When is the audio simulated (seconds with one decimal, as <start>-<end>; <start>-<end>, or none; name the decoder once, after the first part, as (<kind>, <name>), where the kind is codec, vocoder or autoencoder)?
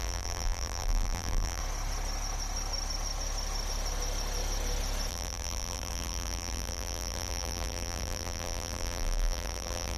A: 0.0-1.6 (vocoder, BigVGAN v2); 5.1-10.0